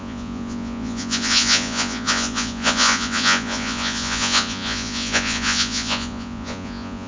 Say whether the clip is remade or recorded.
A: remade